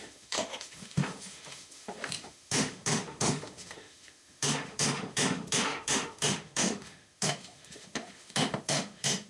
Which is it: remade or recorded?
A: remade